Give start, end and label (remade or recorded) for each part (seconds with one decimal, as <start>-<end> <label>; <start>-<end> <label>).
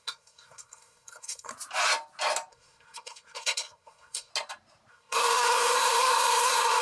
0.0-1.5 remade; 1.5-2.5 recorded; 2.5-4.3 remade; 4.3-4.9 recorded; 4.9-6.8 remade